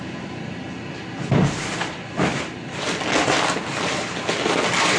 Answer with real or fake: real